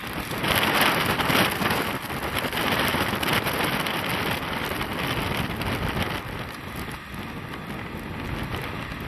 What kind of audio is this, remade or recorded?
recorded